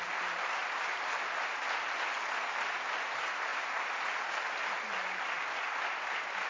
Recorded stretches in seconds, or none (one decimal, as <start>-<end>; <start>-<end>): 0.0-6.5